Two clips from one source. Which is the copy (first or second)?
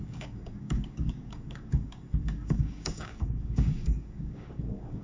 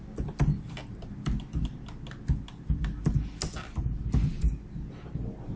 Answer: first